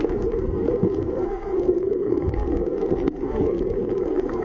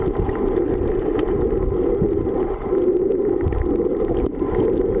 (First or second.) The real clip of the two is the second